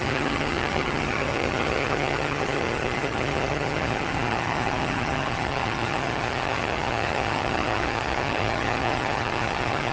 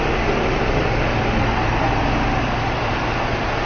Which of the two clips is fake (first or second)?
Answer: first